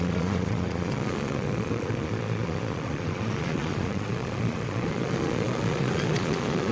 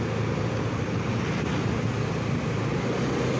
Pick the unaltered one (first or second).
second